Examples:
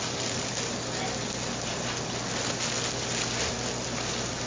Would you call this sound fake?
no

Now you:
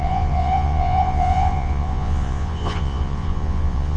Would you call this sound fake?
yes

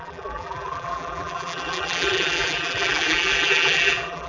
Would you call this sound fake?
yes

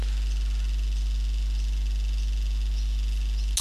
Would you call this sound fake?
no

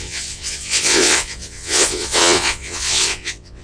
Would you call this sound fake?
yes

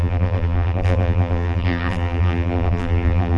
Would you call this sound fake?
yes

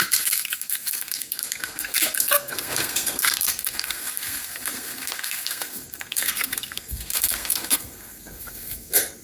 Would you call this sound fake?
yes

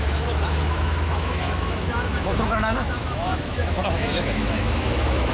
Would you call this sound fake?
yes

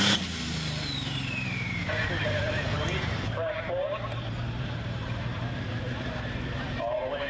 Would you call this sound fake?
yes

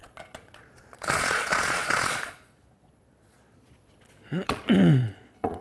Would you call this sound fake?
yes